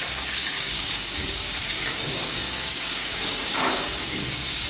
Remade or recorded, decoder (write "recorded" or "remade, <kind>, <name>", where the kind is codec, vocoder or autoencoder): remade, codec, DAC